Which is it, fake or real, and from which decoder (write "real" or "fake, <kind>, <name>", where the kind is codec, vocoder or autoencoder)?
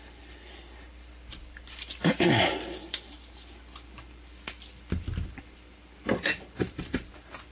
fake, vocoder, BigVGAN v2